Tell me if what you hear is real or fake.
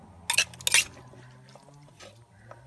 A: real